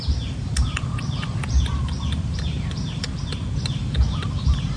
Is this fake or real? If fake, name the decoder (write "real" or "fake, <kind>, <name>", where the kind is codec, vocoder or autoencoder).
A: fake, vocoder, BigVGAN v2